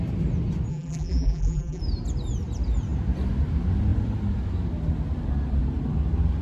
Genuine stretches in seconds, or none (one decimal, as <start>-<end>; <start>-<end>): 0.0-0.7; 1.8-6.4

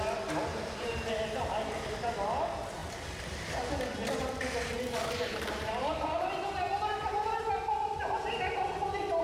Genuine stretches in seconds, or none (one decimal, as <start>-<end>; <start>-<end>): 0.0-0.5; 1.9-5.0; 8.7-9.2

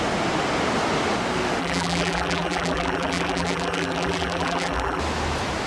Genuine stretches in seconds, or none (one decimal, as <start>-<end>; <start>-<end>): 0.0-1.6; 5.0-5.7

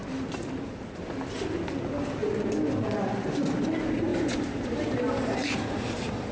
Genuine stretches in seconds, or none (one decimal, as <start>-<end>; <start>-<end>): 0.7-4.1